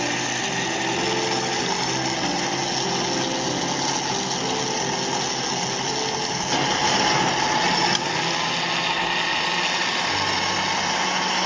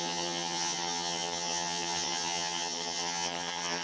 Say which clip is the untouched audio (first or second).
first